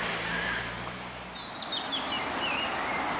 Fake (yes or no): no